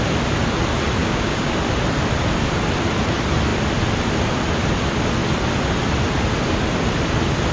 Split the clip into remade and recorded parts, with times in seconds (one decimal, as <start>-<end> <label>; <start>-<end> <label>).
0.0-1.0 recorded; 1.0-1.5 remade; 1.5-7.5 recorded